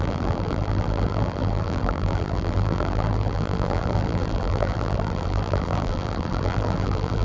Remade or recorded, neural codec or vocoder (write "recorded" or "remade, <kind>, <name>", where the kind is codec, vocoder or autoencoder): remade, vocoder, BigVGAN v2